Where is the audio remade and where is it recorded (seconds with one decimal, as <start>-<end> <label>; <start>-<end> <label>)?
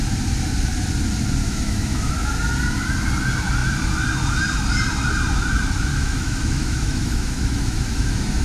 0.0-1.4 recorded; 1.4-2.1 remade; 2.1-5.9 recorded; 5.9-8.4 remade